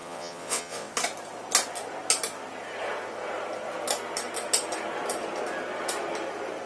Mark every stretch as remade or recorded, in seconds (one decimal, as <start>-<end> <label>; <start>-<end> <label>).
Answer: 0.0-0.9 remade; 0.9-6.7 recorded